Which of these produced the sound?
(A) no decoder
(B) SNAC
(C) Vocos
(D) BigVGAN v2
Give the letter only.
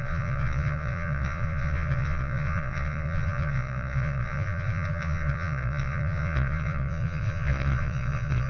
C